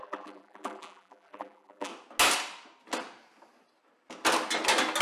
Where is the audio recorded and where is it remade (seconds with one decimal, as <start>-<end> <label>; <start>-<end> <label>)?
0.0-1.9 remade; 1.9-5.0 recorded